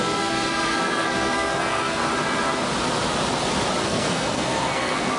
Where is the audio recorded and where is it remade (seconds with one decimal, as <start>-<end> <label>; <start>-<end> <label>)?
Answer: 0.0-2.0 remade; 2.0-3.8 recorded; 3.8-5.2 remade